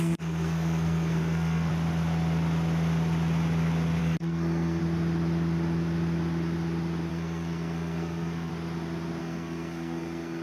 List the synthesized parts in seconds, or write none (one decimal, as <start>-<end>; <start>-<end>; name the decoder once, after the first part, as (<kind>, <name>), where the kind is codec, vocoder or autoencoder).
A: 0.0-1.7 (codec, SNAC); 4.0-4.8; 7.1-8.5; 9.2-10.4